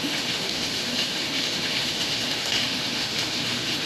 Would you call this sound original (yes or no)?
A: no